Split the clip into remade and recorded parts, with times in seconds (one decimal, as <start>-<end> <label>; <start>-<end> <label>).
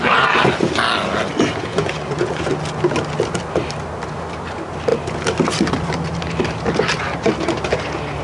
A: 0.0-1.7 recorded; 1.7-2.5 remade; 2.5-8.2 recorded